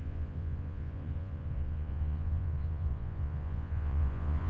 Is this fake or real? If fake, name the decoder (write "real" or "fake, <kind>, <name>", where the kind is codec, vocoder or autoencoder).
fake, vocoder, Vocos